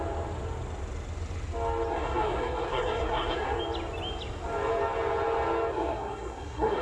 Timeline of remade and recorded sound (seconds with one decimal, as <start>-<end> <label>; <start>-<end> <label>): 0.0-1.9 recorded; 1.9-3.6 remade; 3.6-5.7 recorded; 5.7-6.8 remade